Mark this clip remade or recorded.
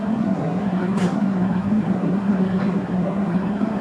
remade